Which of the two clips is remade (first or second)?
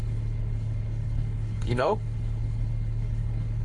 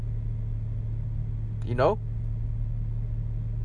first